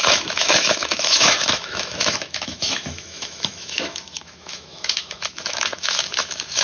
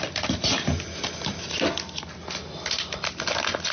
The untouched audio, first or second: second